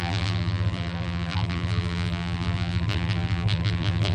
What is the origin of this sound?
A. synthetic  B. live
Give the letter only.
A